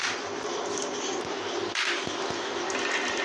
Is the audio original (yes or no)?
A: yes